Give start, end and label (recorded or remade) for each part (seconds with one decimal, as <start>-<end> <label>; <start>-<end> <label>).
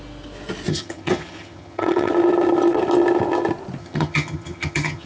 0.0-0.7 recorded; 0.7-2.1 remade; 2.1-3.8 recorded; 3.8-5.1 remade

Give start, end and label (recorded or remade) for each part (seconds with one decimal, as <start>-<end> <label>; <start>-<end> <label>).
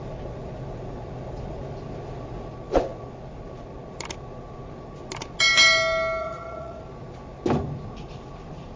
0.0-6.2 recorded; 6.2-6.8 remade; 6.8-8.8 recorded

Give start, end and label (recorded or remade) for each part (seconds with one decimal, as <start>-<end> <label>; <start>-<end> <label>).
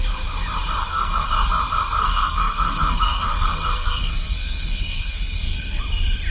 0.0-0.8 recorded; 0.8-1.3 remade; 1.3-2.0 recorded; 2.0-5.8 remade; 5.8-6.3 recorded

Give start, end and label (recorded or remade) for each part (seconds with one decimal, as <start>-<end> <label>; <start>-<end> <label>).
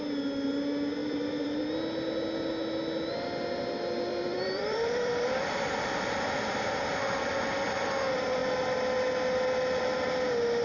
0.0-1.0 recorded; 1.0-1.6 remade; 1.6-4.1 recorded; 4.1-6.0 remade; 6.0-10.6 recorded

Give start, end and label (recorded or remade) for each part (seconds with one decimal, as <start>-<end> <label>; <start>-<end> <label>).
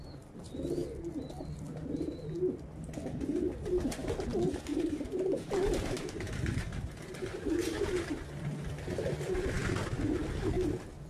0.0-4.7 recorded; 4.7-6.9 remade; 6.9-11.1 recorded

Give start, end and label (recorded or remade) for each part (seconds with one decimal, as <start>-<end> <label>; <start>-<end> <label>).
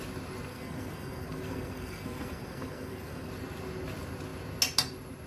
0.0-0.5 recorded; 0.5-3.3 remade; 3.3-5.3 recorded